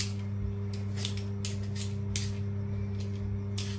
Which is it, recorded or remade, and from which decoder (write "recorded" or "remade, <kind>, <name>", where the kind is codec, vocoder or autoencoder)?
recorded